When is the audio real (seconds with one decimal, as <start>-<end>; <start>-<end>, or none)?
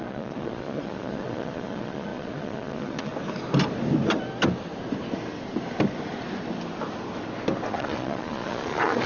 3.1-7.7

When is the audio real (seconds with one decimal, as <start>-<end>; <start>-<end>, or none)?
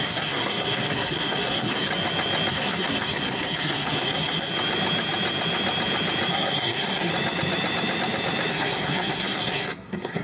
1.9-2.5; 4.5-6.3; 7.1-8.5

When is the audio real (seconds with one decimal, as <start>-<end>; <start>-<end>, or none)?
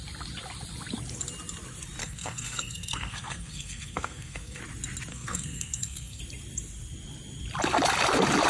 0.0-2.0; 4.6-5.1; 6.2-8.5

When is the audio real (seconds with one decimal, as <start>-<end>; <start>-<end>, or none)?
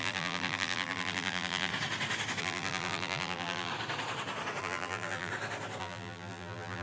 1.7-2.4; 3.7-4.6; 5.3-5.8